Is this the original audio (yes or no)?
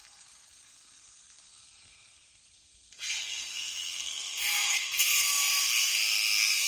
no